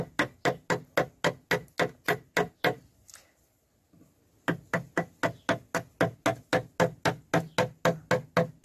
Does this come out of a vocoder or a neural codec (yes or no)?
no